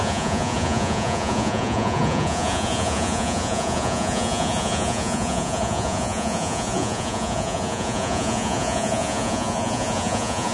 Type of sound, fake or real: fake